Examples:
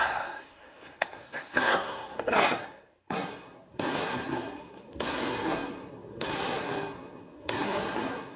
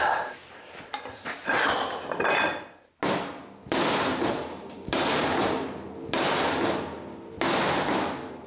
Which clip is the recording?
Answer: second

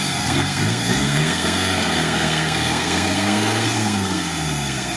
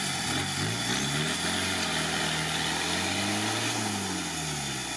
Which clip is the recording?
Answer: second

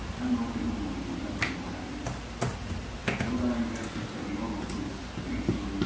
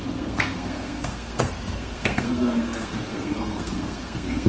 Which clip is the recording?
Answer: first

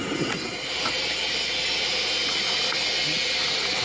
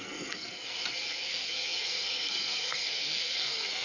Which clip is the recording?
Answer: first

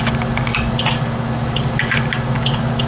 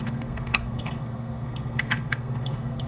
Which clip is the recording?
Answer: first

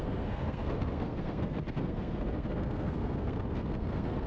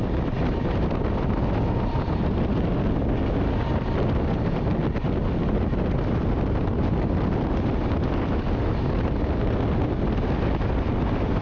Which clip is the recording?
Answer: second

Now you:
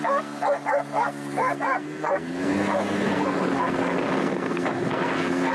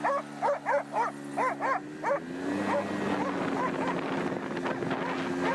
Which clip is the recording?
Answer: second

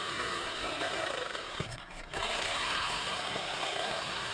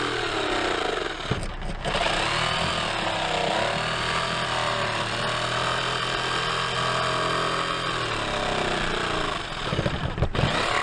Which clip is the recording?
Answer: second